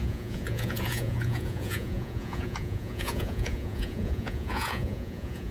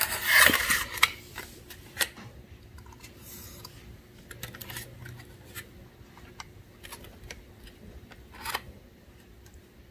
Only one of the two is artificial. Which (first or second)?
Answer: first